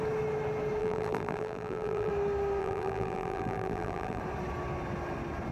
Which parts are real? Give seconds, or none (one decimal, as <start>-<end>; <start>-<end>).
0.0-0.8; 2.1-2.6; 4.2-5.5